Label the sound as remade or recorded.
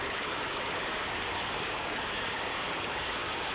remade